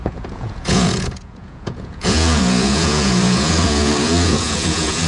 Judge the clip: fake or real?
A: fake